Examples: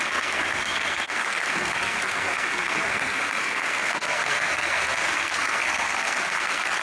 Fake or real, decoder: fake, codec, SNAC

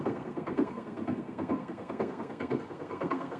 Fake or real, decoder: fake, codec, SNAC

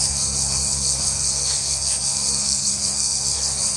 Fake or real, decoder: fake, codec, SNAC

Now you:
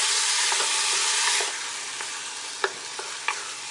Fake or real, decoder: real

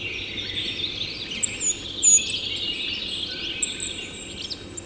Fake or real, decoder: real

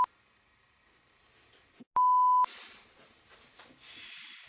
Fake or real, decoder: real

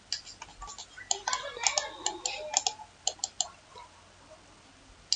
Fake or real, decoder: real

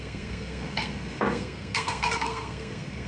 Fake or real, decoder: fake, codec, SNAC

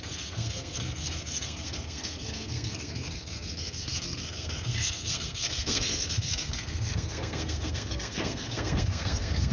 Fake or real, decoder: fake, codec, SNAC